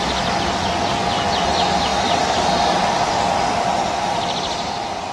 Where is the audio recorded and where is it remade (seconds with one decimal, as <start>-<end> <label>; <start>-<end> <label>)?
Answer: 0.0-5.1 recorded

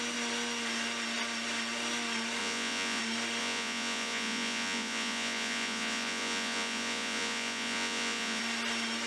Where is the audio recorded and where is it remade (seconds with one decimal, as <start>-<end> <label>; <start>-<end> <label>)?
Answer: 0.0-2.4 recorded; 2.4-3.0 remade; 3.0-3.4 recorded; 3.4-8.4 remade; 8.4-9.1 recorded

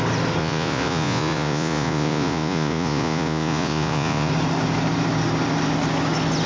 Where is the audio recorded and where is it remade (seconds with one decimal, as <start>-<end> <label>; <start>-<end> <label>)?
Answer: 0.0-0.4 recorded; 0.4-4.3 remade; 4.3-6.5 recorded

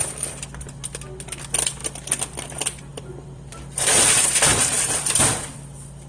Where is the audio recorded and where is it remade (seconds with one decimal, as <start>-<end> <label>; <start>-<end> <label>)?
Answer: 0.0-2.9 recorded; 2.9-3.5 remade; 3.5-4.5 recorded; 4.5-5.2 remade; 5.2-6.1 recorded

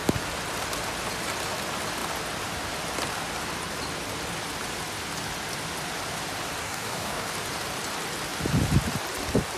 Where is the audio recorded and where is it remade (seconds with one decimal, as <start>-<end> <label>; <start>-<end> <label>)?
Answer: 0.0-6.6 recorded; 6.6-7.3 remade; 7.3-9.6 recorded